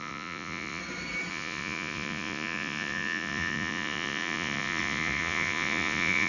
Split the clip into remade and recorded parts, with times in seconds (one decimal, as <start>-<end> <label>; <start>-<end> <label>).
0.0-0.8 remade; 0.8-1.3 recorded; 1.3-6.3 remade